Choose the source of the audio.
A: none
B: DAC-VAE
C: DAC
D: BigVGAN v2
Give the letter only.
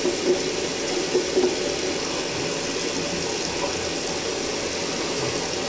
A